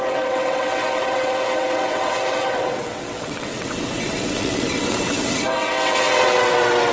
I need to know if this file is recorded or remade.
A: remade